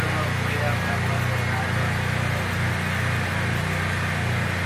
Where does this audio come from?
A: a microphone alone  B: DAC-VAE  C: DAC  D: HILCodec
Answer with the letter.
A